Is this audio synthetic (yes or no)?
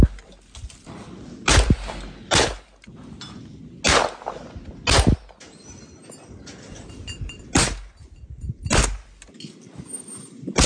no